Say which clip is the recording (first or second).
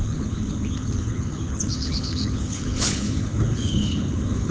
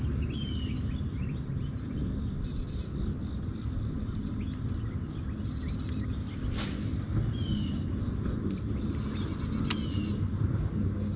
second